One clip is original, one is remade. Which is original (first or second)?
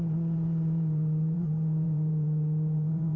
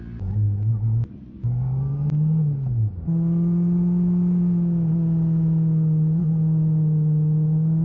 second